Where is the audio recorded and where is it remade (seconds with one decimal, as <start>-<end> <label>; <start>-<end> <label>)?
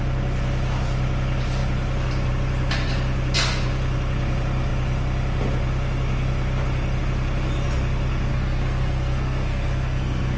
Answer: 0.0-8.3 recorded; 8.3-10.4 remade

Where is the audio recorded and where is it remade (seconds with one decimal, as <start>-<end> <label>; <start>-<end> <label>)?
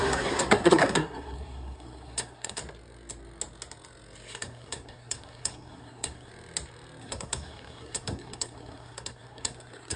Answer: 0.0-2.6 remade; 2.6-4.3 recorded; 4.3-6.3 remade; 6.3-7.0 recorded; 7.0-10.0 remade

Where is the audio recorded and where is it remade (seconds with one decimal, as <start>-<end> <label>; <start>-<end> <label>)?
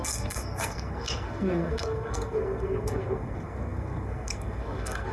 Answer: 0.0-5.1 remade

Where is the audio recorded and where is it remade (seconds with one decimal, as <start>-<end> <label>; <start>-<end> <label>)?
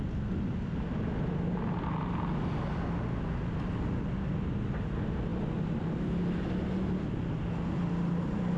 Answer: 0.0-8.6 recorded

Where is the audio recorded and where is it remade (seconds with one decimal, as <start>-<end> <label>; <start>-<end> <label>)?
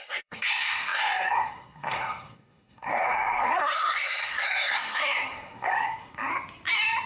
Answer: 0.0-6.3 remade; 6.3-7.1 recorded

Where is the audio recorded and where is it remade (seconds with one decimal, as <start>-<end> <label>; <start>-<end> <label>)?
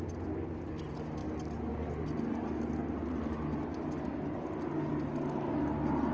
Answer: 0.0-6.1 recorded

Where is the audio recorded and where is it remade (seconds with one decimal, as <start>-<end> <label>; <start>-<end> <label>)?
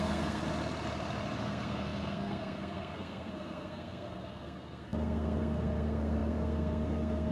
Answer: 0.0-0.4 remade; 0.4-1.4 recorded; 1.4-7.3 remade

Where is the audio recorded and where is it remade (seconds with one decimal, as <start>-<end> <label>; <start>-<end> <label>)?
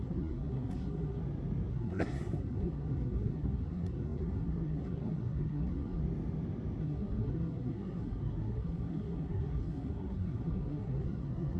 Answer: 0.0-1.2 remade; 1.2-1.7 recorded; 1.7-6.0 remade; 6.0-6.8 recorded; 6.8-11.6 remade